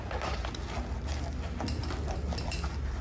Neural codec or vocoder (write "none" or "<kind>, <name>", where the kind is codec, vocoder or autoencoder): none